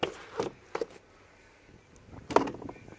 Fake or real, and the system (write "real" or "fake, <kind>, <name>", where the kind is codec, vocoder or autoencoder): real